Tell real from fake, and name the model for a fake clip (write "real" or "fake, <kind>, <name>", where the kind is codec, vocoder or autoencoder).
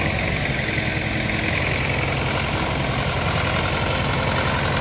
real